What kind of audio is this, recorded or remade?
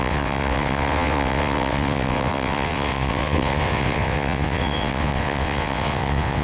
remade